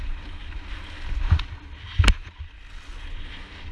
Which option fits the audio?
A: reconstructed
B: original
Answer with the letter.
B